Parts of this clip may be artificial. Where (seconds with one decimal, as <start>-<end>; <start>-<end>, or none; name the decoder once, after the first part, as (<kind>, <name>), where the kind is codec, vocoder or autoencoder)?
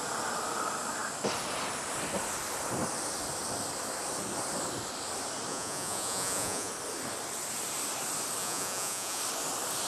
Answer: 5.5-6.7 (vocoder, Vocos); 8.4-9.2